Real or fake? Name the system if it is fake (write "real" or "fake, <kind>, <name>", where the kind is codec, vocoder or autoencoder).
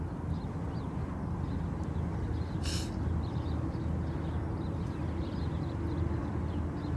real